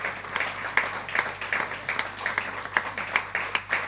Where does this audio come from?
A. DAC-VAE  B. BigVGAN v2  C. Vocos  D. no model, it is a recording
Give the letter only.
D